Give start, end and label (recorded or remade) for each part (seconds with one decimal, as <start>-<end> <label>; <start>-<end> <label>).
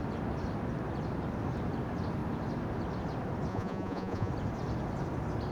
0.0-3.5 recorded; 3.5-4.3 remade; 4.3-5.5 recorded